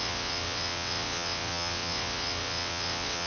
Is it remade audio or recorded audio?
remade